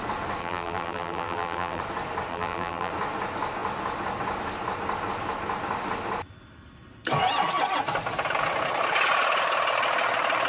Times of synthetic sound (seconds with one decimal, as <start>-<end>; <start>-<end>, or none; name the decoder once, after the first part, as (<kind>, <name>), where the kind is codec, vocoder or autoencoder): 0.4-1.8 (vocoder, BigVGAN v2); 2.3-2.9